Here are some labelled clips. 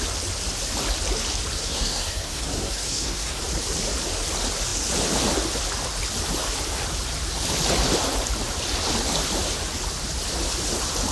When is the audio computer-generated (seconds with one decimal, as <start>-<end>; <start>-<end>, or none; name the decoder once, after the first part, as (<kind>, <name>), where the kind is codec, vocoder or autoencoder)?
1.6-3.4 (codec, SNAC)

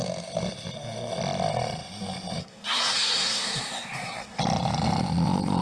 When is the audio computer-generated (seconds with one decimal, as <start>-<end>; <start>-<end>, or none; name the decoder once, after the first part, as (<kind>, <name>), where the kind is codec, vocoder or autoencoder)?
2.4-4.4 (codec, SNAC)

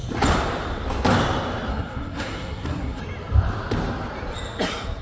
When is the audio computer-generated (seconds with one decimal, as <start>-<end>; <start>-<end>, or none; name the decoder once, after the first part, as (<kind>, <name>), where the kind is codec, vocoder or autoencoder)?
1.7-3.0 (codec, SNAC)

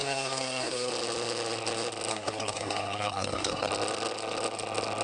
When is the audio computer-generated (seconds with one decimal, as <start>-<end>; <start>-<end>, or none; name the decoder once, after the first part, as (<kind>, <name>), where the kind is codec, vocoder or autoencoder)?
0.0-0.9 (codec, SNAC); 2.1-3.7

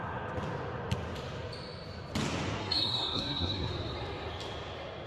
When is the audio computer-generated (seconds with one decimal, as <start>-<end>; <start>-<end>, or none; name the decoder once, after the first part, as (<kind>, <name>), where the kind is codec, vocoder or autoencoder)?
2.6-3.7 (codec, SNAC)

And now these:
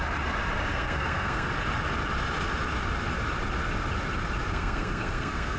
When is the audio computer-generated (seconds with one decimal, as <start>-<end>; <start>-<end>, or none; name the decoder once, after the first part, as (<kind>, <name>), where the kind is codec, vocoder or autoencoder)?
0.7-1.5 (codec, SNAC); 4.5-5.6

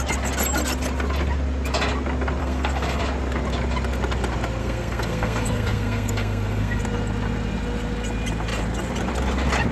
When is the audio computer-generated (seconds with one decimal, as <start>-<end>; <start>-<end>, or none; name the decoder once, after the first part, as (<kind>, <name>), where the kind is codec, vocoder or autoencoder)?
2.4-3.0 (codec, SNAC); 4.6-6.8